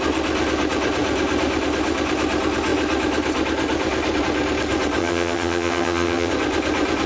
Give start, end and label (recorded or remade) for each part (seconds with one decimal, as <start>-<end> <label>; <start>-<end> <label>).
0.0-5.0 recorded; 5.0-6.3 remade; 6.3-7.1 recorded